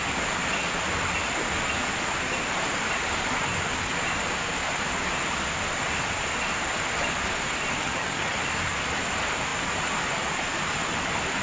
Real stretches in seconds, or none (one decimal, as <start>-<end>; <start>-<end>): 0.0-7.8; 8.4-11.4